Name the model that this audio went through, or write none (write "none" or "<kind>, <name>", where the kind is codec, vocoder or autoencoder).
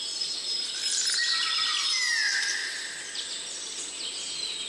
none